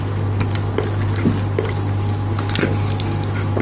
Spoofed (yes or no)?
no